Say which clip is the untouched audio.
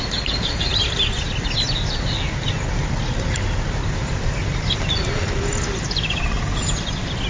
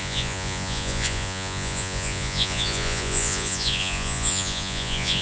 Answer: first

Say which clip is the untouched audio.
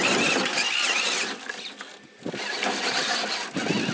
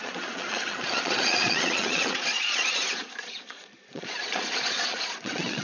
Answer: first